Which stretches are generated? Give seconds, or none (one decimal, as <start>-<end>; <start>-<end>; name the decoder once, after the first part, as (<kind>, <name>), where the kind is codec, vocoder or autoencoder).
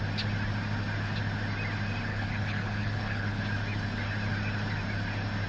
2.1-3.4 (codec, HILCodec)